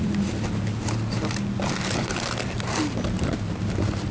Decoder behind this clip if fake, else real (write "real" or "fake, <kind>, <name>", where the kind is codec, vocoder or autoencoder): real